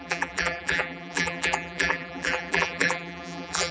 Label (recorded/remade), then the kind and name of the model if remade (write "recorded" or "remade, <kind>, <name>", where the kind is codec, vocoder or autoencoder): remade, vocoder, BigVGAN v2